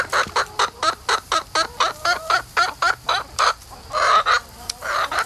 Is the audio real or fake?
fake